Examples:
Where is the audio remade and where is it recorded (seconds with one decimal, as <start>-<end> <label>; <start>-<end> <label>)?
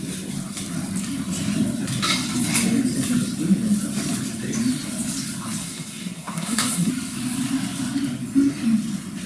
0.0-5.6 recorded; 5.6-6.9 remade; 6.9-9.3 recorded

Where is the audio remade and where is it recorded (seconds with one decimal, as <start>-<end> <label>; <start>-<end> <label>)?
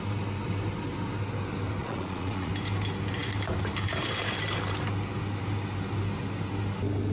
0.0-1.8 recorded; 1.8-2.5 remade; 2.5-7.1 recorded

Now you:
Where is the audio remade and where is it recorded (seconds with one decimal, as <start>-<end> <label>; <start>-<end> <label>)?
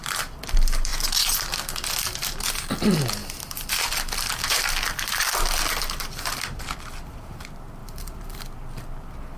0.0-7.8 recorded; 7.8-8.4 remade; 8.4-9.4 recorded